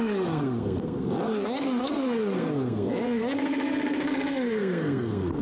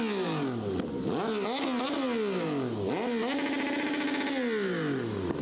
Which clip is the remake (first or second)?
first